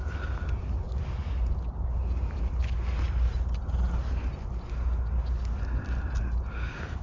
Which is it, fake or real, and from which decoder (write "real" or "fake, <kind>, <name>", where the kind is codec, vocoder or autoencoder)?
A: real